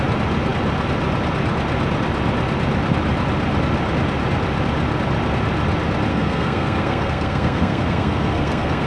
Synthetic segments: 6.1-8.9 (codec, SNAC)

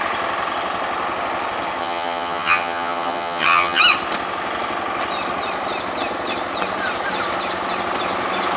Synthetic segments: 1.8-3.8 (vocoder, HiFi-GAN)

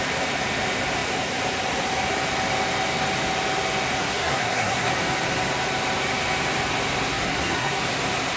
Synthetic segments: 4.0-4.9 (codec, SNAC); 7.1-7.8